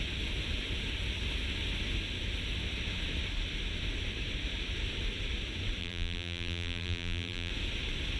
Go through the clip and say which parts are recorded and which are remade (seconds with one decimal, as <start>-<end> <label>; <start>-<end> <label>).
0.0-5.8 recorded; 5.8-7.5 remade; 7.5-8.2 recorded